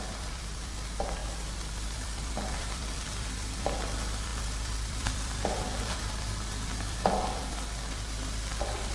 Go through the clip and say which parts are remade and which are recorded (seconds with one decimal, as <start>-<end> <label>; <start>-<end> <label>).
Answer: 0.0-8.9 remade